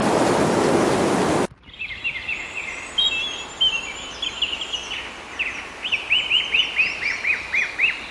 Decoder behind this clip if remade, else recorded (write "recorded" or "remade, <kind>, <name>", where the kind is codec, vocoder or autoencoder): recorded